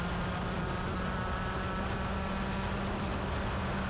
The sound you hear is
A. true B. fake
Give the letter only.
A